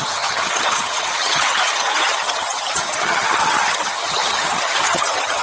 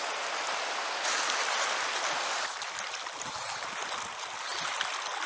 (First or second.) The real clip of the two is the second